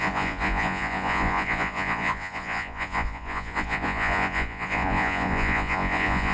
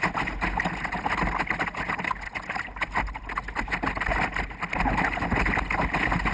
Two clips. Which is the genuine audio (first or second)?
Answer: second